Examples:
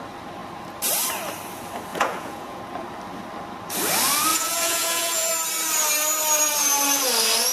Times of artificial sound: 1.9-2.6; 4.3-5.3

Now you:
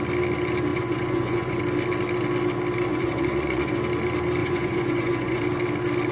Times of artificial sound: 0.7-1.6; 2.9-3.8; 4.4-5.4